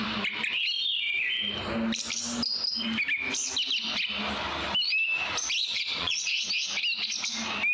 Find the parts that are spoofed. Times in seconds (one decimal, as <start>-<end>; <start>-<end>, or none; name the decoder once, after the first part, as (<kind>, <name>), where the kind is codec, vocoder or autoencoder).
5.6-6.5 (vocoder, Vocos)